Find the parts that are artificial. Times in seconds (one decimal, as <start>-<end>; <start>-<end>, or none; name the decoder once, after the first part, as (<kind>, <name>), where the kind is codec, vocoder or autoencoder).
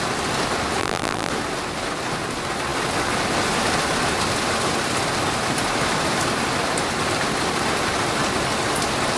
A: 0.8-1.3 (vocoder, BigVGAN v2)